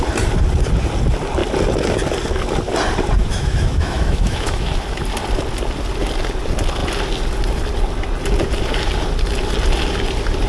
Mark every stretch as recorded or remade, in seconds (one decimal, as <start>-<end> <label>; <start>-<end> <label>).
0.0-3.2 recorded; 3.2-4.7 remade; 4.7-10.5 recorded